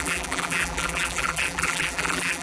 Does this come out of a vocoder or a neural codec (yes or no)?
yes